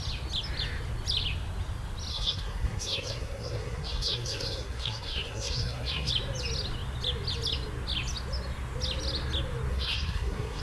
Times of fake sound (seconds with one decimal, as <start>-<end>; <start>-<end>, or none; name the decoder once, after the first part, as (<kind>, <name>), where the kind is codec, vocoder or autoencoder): 2.1-6.1 (codec, SNAC); 9.7-10.6